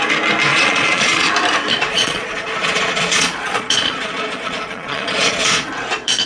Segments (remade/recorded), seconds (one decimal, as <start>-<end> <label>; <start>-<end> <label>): 0.0-0.5 recorded; 0.5-1.3 remade; 1.3-1.9 recorded; 1.9-5.7 remade; 5.7-6.3 recorded